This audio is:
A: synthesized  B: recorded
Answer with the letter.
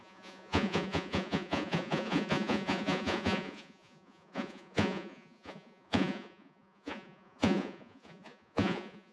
A